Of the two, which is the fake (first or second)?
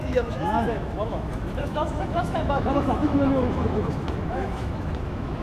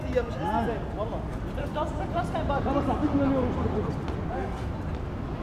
first